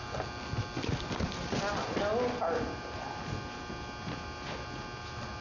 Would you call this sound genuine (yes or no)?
yes